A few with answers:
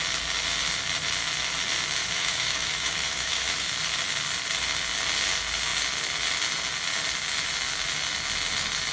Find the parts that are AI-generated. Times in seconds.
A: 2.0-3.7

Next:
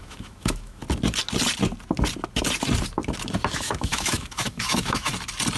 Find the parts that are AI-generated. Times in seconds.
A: 0.0-0.8; 3.5-5.1